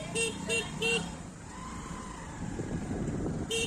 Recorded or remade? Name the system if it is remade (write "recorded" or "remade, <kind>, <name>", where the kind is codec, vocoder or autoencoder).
remade, vocoder, BigVGAN v2